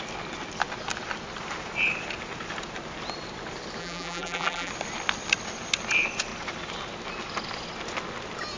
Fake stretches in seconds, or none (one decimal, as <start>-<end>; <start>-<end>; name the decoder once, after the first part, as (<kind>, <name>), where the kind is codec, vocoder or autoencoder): 3.8-4.7 (vocoder, BigVGAN v2)